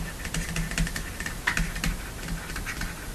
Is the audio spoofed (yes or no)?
no